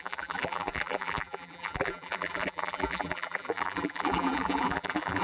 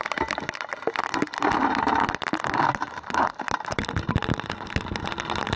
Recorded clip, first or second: second